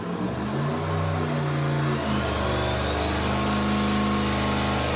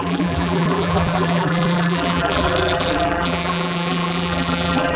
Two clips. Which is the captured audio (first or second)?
first